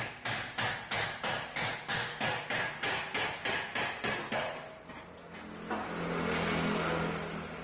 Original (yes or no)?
yes